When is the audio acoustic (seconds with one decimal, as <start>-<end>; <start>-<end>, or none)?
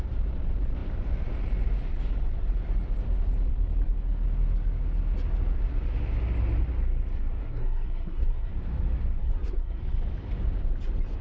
0.0-7.4; 8.5-9.2; 9.8-11.2